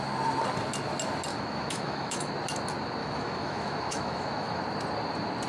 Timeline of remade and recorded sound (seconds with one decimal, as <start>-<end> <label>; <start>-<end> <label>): 0.0-1.3 recorded; 1.3-2.3 remade; 2.3-3.0 recorded; 3.0-4.6 remade; 4.6-5.5 recorded